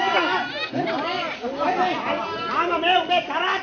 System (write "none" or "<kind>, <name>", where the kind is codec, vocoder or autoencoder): none